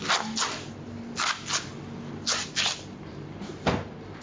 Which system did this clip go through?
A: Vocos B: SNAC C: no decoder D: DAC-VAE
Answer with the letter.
C